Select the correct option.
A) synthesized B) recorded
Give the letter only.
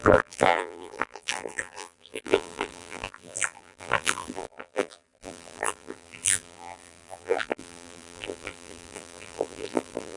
A